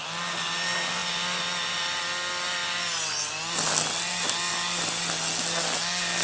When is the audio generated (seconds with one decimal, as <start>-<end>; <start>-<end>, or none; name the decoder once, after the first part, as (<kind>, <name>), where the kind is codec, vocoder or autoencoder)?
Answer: none